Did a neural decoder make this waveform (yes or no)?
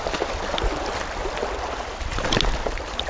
no